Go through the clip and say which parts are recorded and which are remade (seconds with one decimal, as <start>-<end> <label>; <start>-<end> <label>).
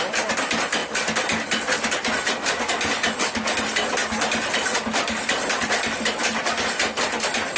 0.0-7.6 recorded